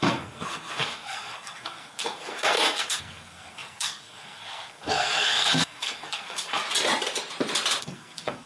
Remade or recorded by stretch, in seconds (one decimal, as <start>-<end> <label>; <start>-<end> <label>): 0.0-6.6 remade; 6.6-7.8 recorded; 7.8-8.5 remade